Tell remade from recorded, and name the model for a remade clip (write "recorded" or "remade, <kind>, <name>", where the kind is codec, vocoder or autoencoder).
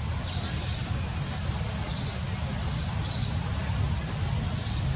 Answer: remade, vocoder, BigVGAN v2